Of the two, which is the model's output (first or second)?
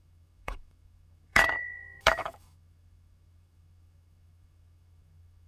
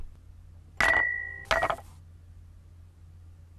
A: first